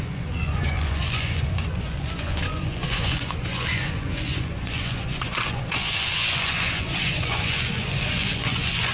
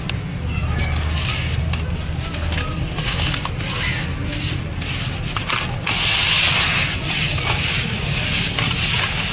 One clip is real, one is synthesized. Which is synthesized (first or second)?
first